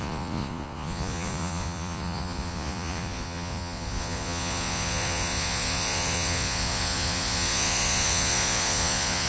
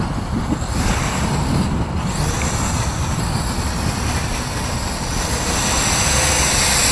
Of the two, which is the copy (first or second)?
first